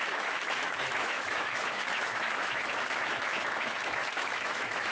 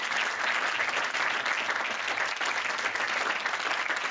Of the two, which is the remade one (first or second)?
first